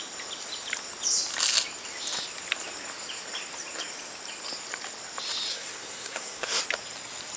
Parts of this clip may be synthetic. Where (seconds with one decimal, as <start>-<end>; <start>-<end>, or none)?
5.5-6.6